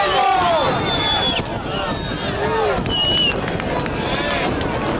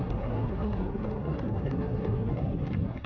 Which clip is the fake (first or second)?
second